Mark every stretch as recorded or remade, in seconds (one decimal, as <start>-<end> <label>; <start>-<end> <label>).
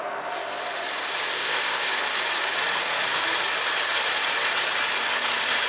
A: 0.0-1.3 recorded; 1.3-1.9 remade; 1.9-5.7 recorded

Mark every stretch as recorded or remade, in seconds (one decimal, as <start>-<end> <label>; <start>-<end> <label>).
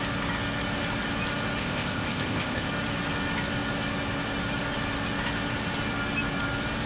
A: 0.0-1.6 recorded; 1.6-2.7 remade; 2.7-6.9 recorded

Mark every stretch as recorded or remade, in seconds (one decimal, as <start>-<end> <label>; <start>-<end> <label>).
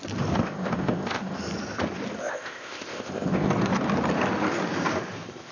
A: 0.0-0.4 recorded; 0.4-1.4 remade; 1.4-2.2 recorded; 2.2-3.5 remade; 3.5-5.5 recorded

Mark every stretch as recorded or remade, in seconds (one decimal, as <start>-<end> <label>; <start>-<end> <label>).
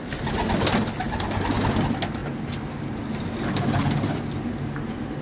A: 0.0-5.2 recorded